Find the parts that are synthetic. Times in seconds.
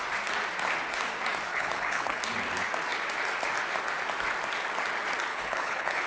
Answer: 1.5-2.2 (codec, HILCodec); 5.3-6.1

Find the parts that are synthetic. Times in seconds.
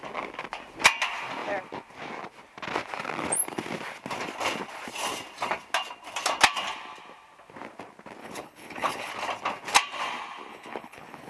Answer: 8.2-9.1 (codec, HILCodec); 10.5-11.3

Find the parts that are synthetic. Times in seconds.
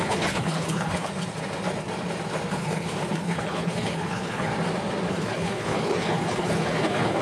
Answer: 0.0-1.1 (codec, HILCodec); 2.5-4.5; 5.1-7.2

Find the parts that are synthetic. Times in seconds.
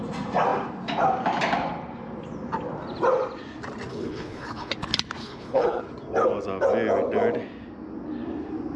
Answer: 3.9-4.7 (codec, HILCodec); 5.2-5.8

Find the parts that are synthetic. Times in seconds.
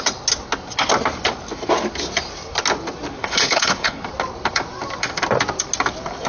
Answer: 3.2-4.0 (codec, HILCodec)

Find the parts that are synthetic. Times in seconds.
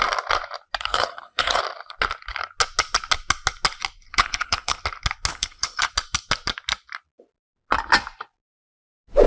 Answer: 0.9-1.6 (codec, HILCodec); 4.1-4.8; 5.3-5.9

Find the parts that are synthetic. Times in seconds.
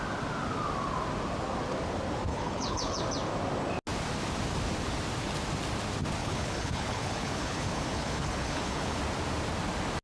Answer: 2.3-3.0 (codec, HILCodec); 6.2-9.0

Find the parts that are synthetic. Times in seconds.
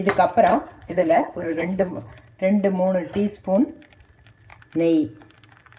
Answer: 0.5-2.1 (codec, HILCodec)